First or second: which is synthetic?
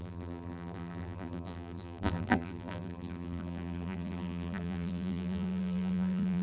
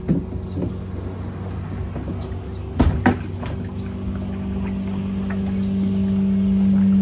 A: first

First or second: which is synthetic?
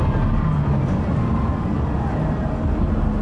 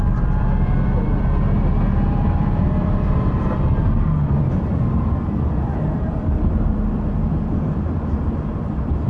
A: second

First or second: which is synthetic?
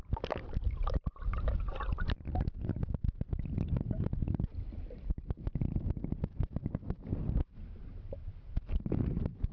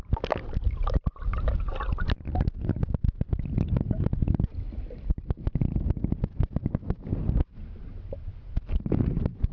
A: first